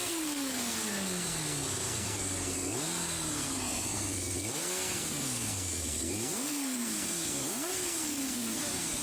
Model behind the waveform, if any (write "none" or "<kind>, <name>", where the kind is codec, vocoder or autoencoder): codec, SNAC